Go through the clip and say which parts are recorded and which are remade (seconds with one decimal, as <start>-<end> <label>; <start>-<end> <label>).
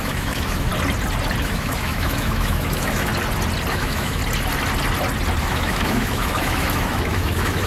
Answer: 0.0-0.7 remade; 0.7-1.4 recorded; 1.4-3.1 remade; 3.1-3.7 recorded; 3.7-4.2 remade; 4.2-5.4 recorded; 5.4-7.7 remade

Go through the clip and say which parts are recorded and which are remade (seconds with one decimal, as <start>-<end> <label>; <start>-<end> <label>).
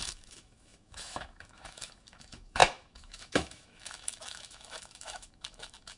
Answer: 0.0-6.0 remade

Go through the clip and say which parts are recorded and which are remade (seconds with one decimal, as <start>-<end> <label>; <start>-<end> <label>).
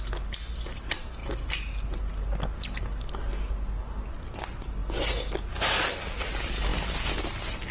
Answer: 0.0-7.7 recorded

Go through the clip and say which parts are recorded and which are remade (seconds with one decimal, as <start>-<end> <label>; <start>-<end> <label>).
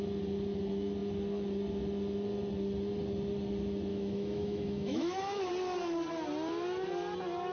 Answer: 0.0-3.9 recorded; 3.9-5.5 remade; 5.5-7.5 recorded